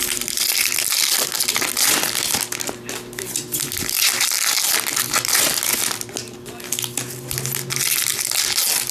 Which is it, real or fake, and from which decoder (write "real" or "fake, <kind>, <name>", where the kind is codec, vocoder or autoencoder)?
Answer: real